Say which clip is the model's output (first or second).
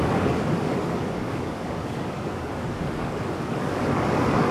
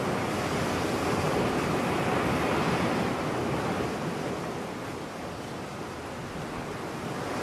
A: first